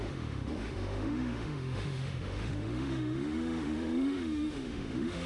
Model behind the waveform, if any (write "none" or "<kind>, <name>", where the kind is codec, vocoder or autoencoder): autoencoder, DAC-VAE